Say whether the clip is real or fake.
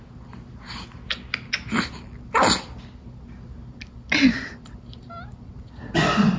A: real